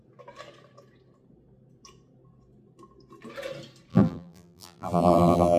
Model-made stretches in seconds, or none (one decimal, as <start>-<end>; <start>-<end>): 3.9-5.6